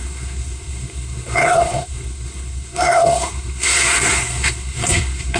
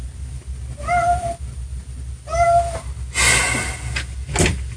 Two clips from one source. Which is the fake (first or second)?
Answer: first